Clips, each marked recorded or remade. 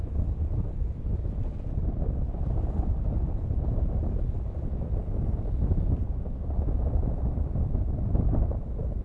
recorded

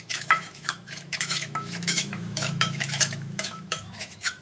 remade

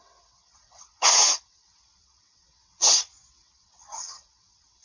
remade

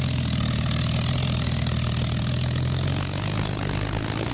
recorded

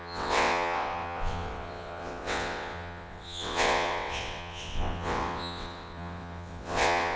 remade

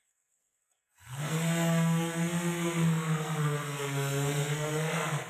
remade